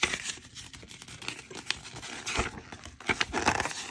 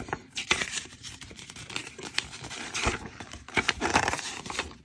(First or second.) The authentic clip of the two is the first